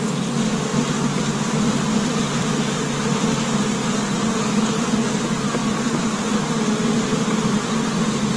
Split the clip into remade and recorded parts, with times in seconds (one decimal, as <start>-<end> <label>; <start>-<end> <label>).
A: 0.0-0.7 recorded; 0.7-2.5 remade; 2.5-4.2 recorded; 4.2-4.9 remade; 4.9-8.4 recorded